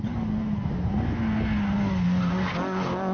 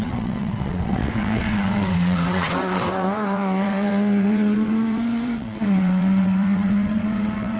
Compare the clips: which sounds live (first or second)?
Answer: first